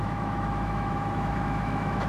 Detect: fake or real fake